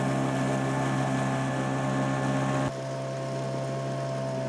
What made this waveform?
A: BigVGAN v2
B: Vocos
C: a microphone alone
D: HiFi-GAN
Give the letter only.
C